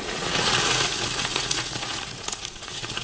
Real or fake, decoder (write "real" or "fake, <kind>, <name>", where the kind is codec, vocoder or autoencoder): fake, vocoder, Vocos